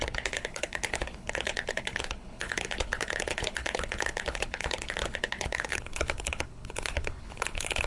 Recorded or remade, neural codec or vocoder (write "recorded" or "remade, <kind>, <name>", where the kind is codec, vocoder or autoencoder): remade, codec, HILCodec